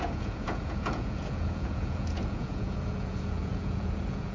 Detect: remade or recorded remade